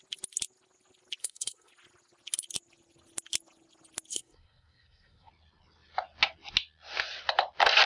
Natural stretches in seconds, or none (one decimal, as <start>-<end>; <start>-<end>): 0.0-1.2; 1.7-4.1; 5.3-7.8